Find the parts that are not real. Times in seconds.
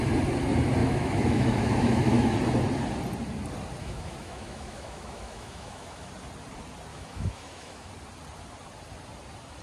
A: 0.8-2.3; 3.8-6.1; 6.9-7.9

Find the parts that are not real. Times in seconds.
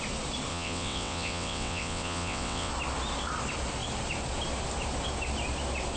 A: 0.5-2.7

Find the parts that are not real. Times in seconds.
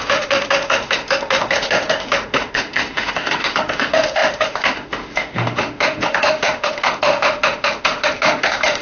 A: 0.0-8.8